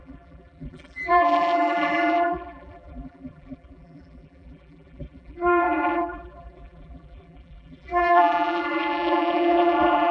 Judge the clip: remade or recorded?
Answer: remade